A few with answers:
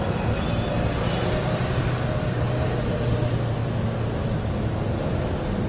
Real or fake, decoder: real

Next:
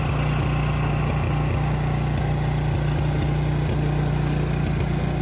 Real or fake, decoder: real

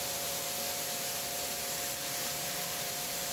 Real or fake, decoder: fake, vocoder, BigVGAN v2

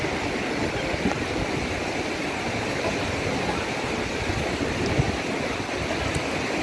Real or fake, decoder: real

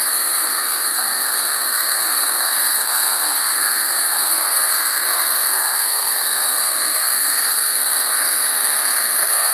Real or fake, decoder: fake, codec, SNAC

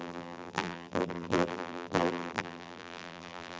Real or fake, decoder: fake, vocoder, BigVGAN v2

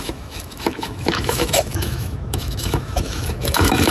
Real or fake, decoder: fake, autoencoder, DAC-VAE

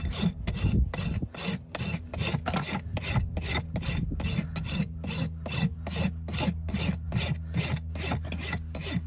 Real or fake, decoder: real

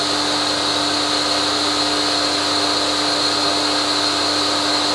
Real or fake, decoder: real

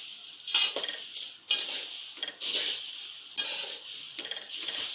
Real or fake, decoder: real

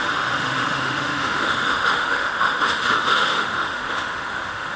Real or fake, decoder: fake, autoencoder, DAC-VAE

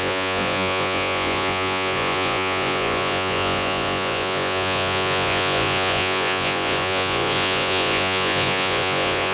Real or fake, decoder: fake, vocoder, Vocos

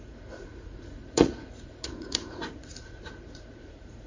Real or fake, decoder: fake, vocoder, Vocos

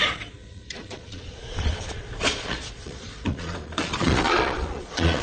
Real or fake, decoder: fake, vocoder, Vocos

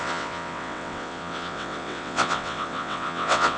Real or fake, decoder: fake, vocoder, WaveNeXt